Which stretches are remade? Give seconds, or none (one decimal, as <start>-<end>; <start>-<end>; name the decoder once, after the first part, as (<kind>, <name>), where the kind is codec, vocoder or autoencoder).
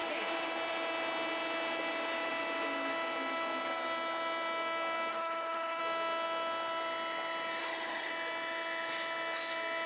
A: 5.1-5.8 (codec, HILCodec); 7.6-8.1